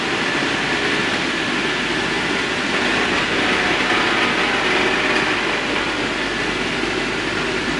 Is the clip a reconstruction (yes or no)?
no